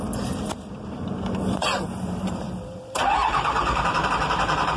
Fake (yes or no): yes